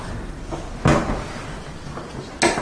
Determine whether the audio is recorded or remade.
recorded